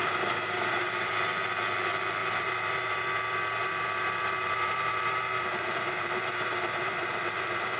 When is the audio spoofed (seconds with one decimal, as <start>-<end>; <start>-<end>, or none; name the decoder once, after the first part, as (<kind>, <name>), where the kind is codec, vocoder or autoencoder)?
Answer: 0.0-1.1 (vocoder, BigVGAN v2); 2.2-2.9; 3.6-7.8